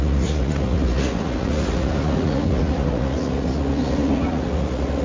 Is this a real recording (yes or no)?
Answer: no